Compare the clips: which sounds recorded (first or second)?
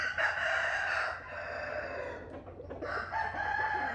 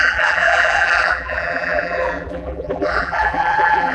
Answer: first